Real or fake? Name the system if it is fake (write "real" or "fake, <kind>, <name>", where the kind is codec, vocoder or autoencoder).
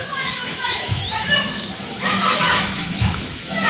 fake, autoencoder, DAC-VAE